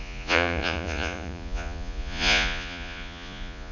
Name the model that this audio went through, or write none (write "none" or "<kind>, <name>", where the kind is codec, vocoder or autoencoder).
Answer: vocoder, Vocos